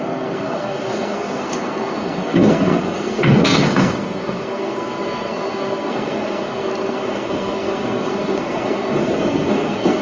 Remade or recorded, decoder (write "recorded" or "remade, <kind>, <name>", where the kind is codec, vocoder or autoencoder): remade, codec, SNAC